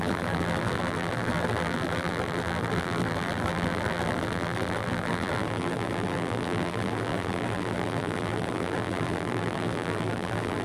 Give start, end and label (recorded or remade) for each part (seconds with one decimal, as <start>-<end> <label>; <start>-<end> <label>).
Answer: 0.0-10.6 remade